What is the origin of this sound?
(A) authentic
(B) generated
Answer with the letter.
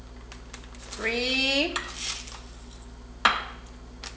A